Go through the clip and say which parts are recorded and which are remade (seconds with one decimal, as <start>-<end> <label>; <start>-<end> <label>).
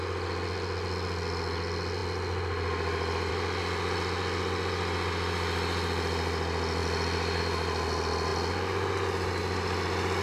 0.0-10.2 recorded